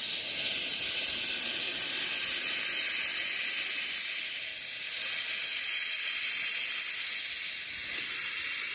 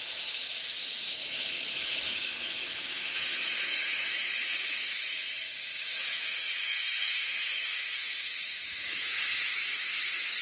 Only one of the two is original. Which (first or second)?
first